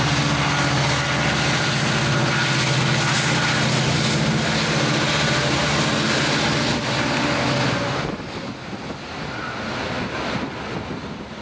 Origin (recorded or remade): recorded